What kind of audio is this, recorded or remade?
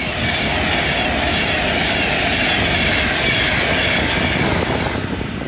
recorded